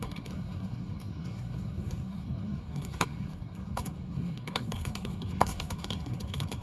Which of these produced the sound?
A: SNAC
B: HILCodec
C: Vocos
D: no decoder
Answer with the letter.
A